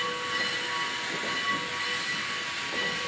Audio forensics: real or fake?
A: real